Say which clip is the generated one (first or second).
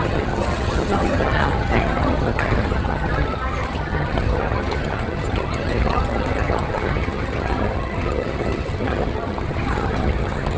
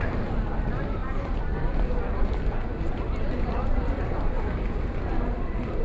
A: first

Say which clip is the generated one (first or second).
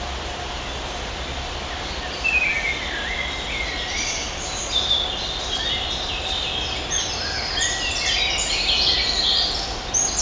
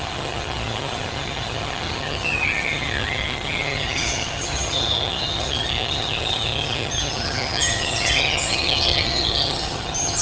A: second